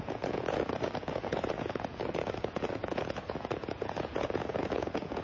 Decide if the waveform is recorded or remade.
remade